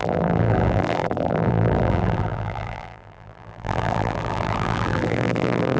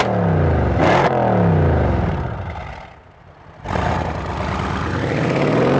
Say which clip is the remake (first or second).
first